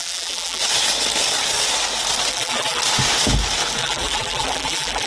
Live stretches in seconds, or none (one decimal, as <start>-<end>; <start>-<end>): 0.6-2.3; 2.8-3.8

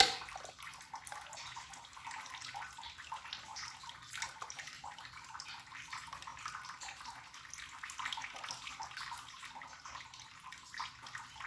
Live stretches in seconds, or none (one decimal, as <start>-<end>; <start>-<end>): 0.0-11.5

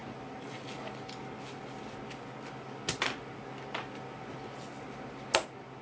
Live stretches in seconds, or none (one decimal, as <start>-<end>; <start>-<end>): 0.6-5.8

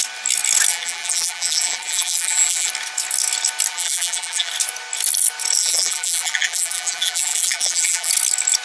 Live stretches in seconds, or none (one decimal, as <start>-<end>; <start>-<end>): 0.0-0.7; 2.7-3.7; 4.5-5.6; 8.1-8.6

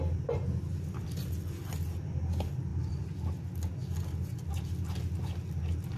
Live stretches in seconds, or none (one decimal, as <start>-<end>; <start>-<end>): 0.0-0.7; 1.4-2.7; 3.3-6.0